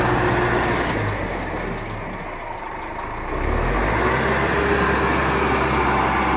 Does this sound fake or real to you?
real